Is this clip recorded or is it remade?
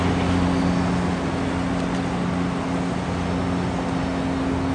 recorded